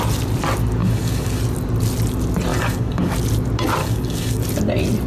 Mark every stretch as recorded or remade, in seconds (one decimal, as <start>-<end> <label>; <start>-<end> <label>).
0.0-0.8 recorded; 0.8-1.4 remade; 1.4-2.5 recorded; 2.5-3.1 remade; 3.1-3.8 recorded; 3.8-4.4 remade; 4.4-5.1 recorded